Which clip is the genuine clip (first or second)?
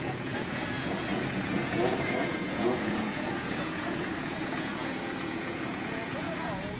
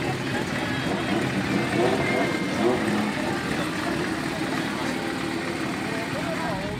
second